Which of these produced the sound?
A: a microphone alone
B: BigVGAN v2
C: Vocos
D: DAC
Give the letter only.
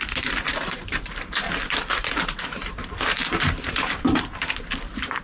B